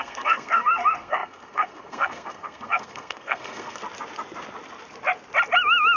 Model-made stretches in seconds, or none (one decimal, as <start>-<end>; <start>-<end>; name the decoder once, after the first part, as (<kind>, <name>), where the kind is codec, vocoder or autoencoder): 0.0-3.8 (codec, SNAC)

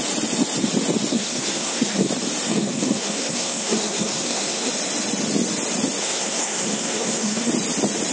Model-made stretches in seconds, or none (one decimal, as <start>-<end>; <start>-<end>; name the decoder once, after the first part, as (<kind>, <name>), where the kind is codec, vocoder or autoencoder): 1.1-2.1 (codec, SNAC); 2.5-4.7; 6.0-7.5